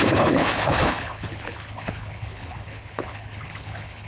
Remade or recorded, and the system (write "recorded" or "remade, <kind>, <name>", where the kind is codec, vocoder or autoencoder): remade, codec, HILCodec